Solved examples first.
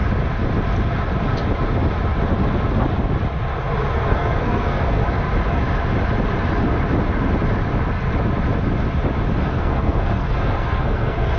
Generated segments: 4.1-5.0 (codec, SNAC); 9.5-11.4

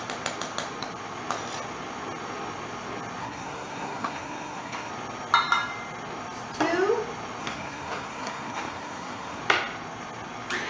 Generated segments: 3.2-4.9 (codec, SNAC); 7.4-9.4